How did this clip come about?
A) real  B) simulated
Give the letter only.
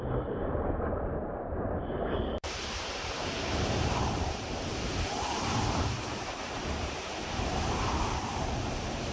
B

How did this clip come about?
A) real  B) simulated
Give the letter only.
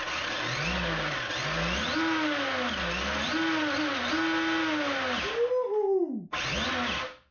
A